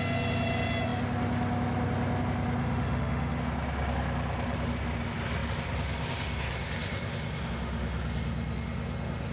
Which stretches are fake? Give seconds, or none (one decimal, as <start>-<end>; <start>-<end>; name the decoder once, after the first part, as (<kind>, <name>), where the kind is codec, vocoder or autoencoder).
2.6-3.4 (autoencoder, DAC-VAE)